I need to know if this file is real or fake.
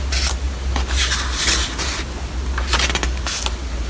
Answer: real